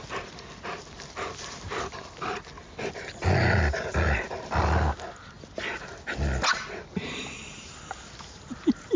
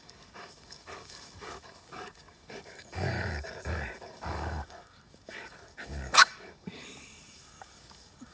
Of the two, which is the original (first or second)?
first